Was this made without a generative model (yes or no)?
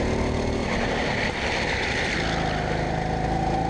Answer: yes